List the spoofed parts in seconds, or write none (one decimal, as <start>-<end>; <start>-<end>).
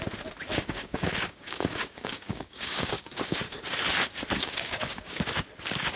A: 0.5-3.4; 4.4-5.2